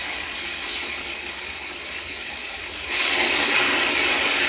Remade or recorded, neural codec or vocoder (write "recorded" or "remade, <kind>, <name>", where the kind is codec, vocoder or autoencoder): remade, codec, DAC